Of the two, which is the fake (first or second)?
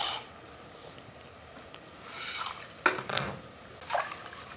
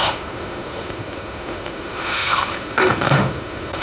second